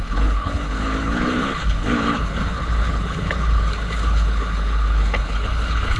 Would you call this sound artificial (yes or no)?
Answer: yes